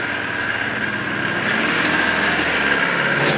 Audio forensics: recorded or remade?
recorded